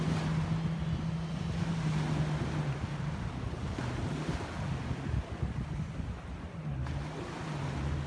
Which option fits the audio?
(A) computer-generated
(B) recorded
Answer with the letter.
B